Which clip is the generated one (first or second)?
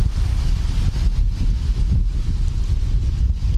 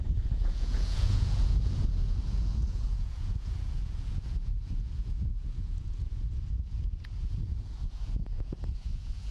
second